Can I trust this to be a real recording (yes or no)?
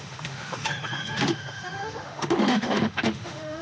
no